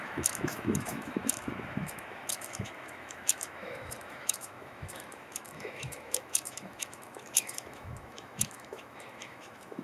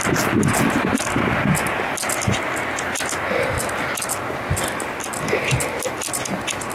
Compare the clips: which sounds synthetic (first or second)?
first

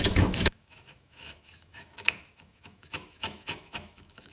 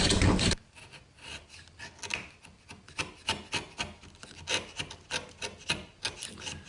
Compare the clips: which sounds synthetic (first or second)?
first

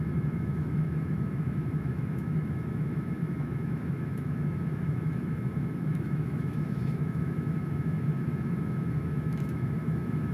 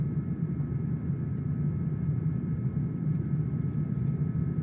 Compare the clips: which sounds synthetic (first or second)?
first